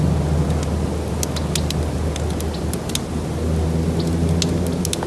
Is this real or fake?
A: real